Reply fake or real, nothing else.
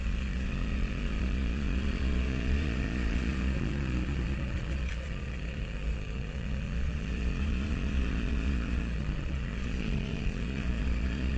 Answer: fake